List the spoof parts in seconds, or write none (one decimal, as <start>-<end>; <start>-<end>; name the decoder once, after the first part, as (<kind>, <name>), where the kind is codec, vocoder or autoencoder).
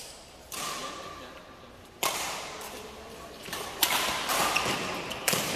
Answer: none